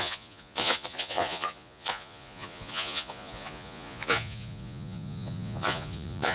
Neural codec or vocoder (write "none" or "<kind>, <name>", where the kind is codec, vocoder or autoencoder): vocoder, Vocos